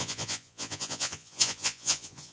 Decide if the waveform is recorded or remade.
remade